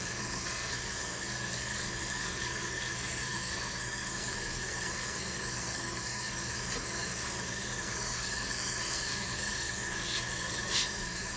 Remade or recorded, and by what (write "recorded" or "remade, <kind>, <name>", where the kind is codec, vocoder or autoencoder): remade, codec, SNAC